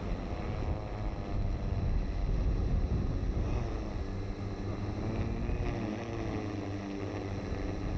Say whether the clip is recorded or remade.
recorded